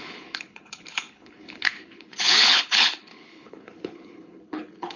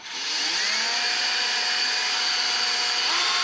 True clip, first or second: second